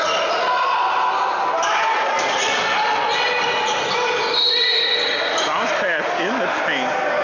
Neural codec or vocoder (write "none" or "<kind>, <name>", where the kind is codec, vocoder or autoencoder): none